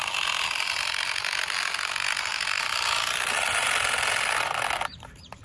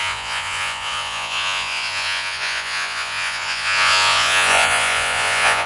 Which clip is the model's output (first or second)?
second